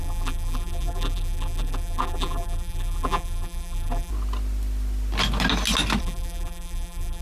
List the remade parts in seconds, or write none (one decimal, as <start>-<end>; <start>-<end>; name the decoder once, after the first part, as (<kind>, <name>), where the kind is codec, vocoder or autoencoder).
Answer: 0.0-4.1 (vocoder, BigVGAN v2); 6.0-7.2